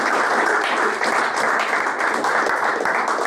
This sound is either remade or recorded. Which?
recorded